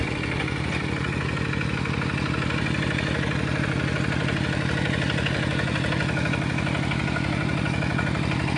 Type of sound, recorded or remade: recorded